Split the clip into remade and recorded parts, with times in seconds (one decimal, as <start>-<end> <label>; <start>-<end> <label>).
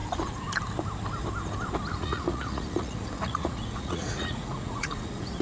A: 0.0-1.9 recorded; 1.9-5.4 remade